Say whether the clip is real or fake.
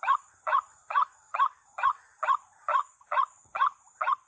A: fake